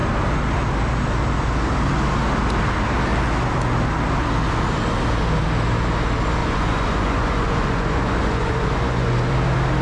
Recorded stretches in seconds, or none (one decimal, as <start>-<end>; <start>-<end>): 0.0-6.4; 9.3-9.8